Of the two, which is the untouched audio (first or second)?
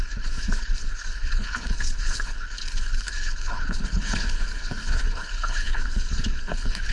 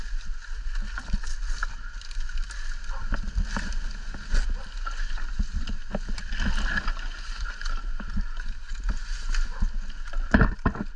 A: second